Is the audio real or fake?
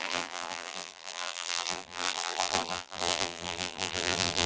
fake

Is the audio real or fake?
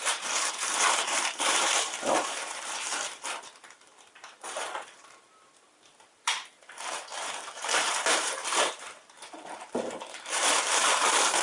fake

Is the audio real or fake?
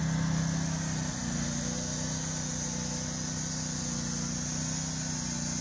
real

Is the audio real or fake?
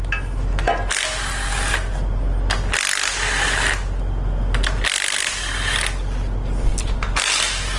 real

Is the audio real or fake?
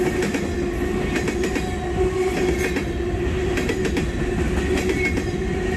real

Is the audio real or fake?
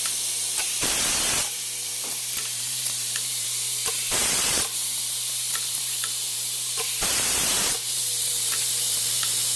fake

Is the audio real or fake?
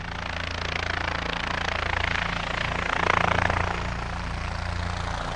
real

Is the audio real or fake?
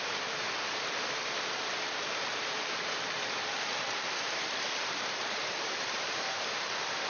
fake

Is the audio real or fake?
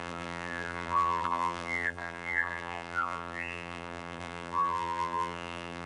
fake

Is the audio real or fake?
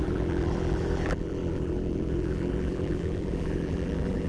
fake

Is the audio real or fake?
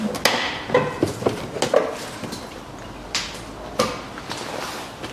real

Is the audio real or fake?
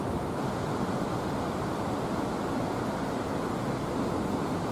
fake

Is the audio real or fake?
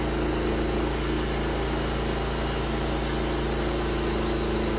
real